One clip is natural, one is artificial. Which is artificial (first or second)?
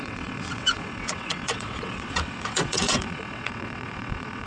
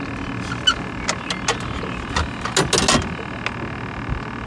first